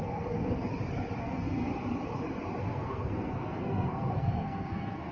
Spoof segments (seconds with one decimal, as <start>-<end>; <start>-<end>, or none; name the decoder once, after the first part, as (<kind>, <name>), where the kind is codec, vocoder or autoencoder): 0.0-0.7 (codec, SNAC); 1.2-1.7; 2.6-5.1